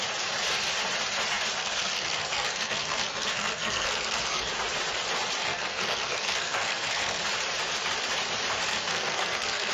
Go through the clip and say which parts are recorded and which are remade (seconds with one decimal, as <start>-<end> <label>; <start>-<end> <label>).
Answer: 0.0-1.6 recorded; 1.6-4.5 remade; 4.5-5.4 recorded; 5.4-7.2 remade; 7.2-8.7 recorded; 8.7-9.7 remade

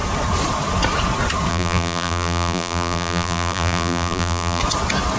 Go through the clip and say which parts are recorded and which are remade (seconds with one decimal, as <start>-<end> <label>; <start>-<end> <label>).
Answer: 0.0-1.5 recorded; 1.5-4.6 remade; 4.6-5.2 recorded